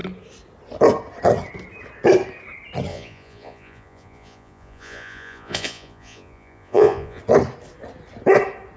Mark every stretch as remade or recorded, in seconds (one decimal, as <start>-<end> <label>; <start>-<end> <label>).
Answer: 0.0-2.9 recorded; 2.9-7.2 remade; 7.2-8.8 recorded